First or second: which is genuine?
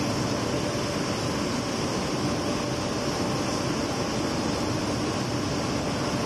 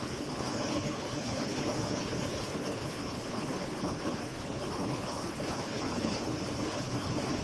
first